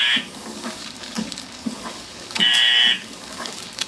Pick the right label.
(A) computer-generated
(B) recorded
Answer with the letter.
A